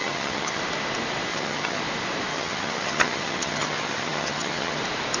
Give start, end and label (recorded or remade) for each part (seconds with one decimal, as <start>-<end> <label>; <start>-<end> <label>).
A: 0.0-0.6 remade; 0.6-1.3 recorded; 1.3-1.8 remade; 1.8-2.3 recorded; 2.3-4.8 remade; 4.8-5.2 recorded

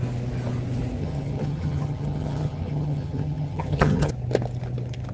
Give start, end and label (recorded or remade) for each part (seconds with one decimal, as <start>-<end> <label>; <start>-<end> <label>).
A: 0.0-1.0 recorded; 1.0-4.1 remade; 4.1-5.1 recorded